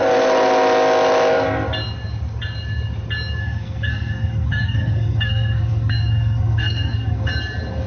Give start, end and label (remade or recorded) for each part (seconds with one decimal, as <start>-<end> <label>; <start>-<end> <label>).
0.0-3.4 recorded; 3.4-7.3 remade; 7.3-7.9 recorded